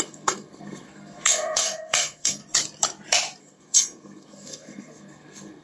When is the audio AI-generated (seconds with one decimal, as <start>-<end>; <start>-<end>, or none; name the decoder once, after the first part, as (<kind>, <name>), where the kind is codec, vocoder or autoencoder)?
0.0-2.4 (codec, SNAC); 3.4-5.6